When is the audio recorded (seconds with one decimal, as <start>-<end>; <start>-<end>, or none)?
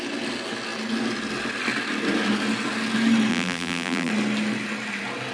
0.0-3.3; 4.1-5.3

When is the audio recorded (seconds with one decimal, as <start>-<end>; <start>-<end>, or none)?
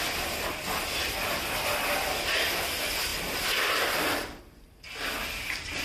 0.0-3.1; 4.4-5.8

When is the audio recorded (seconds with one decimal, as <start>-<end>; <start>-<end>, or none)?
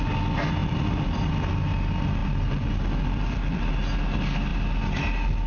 0.0-0.6; 1.3-2.2; 3.7-5.5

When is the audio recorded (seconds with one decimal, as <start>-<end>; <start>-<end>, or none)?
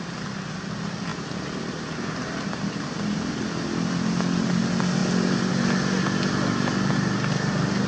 0.0-7.9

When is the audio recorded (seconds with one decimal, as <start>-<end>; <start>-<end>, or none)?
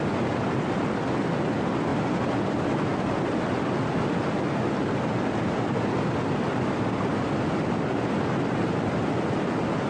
0.0-1.9; 2.7-9.9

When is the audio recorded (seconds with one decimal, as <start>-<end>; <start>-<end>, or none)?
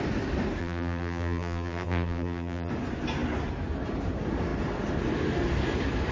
0.0-0.6; 2.7-6.1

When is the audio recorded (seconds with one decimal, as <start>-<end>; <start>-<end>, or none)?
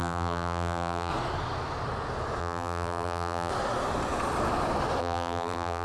1.1-2.4; 3.5-5.0